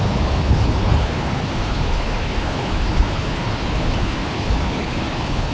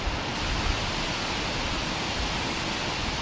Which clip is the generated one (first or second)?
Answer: first